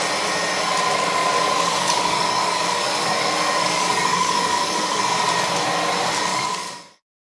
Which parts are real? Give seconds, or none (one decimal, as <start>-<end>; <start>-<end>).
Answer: 0.0-1.2; 5.0-6.3